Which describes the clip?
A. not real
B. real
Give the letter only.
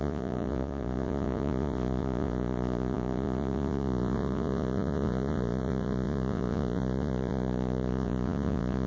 A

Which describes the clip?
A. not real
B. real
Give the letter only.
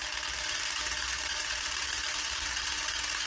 B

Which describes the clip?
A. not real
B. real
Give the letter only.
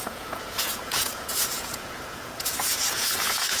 A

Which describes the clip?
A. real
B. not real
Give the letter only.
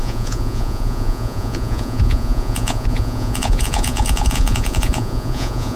B